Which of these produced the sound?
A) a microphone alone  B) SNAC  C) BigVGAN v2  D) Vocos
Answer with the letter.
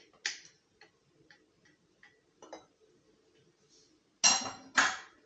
A